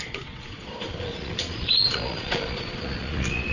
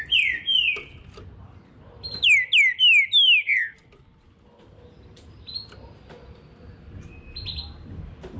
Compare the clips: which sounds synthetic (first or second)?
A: first